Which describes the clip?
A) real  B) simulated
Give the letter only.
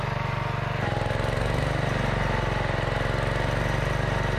A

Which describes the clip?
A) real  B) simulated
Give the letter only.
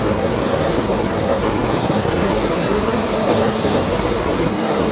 B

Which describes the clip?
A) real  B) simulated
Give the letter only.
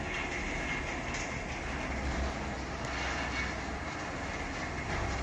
A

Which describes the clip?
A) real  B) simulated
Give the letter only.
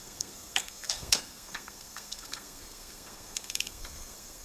B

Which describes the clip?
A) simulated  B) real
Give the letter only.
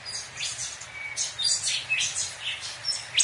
B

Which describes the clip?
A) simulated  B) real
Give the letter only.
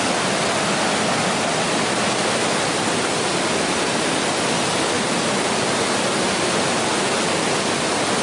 B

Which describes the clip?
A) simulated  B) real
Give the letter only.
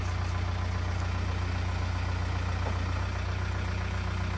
B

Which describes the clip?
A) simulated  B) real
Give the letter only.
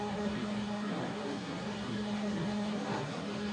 A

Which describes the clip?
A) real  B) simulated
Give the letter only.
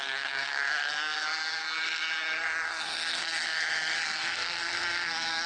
B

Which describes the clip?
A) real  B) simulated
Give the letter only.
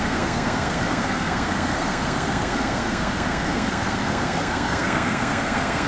B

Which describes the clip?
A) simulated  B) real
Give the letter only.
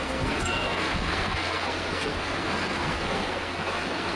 A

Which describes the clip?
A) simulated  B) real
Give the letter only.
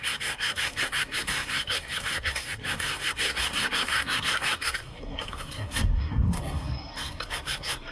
A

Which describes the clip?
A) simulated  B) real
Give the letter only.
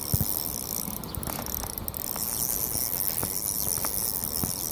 B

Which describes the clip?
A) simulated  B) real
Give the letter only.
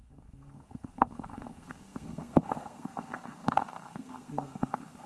A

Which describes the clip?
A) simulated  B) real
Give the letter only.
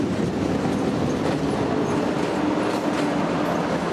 B